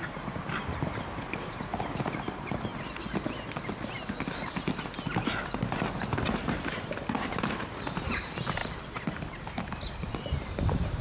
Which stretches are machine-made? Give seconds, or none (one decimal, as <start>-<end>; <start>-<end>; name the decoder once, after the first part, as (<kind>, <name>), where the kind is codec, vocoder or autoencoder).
0.0-2.7 (vocoder, BigVGAN v2); 7.4-8.6; 9.4-11.0